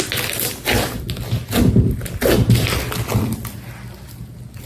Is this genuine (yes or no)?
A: yes